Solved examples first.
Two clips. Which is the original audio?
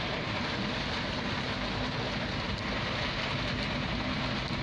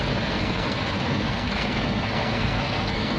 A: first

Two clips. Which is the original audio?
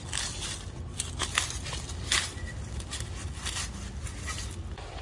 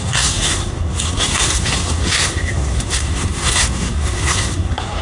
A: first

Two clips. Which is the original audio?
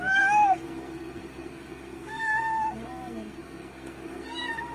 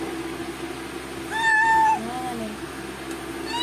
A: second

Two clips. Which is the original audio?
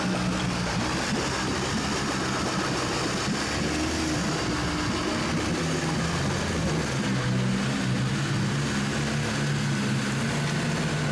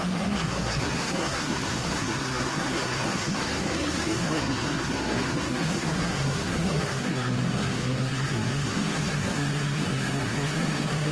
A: first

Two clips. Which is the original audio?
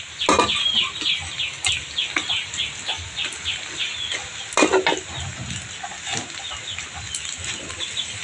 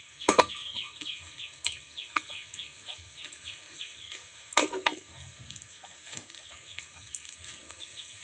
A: first